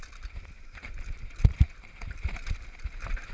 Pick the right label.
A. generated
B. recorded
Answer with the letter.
B